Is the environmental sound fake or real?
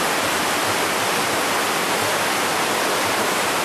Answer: real